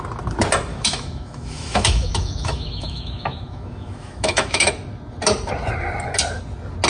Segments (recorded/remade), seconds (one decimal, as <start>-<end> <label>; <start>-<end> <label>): 0.0-0.7 recorded; 0.7-4.7 remade; 4.7-6.9 recorded